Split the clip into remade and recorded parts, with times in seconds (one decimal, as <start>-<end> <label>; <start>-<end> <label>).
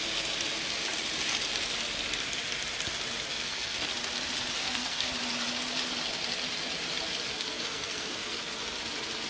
0.0-3.3 recorded; 3.3-3.9 remade; 3.9-4.6 recorded; 4.6-5.1 remade; 5.1-7.3 recorded; 7.3-8.4 remade; 8.4-9.3 recorded